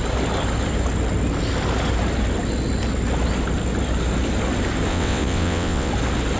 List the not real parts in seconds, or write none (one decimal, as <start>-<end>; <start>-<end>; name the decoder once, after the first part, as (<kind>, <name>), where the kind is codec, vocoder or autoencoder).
4.9-5.9 (vocoder, WaveNeXt)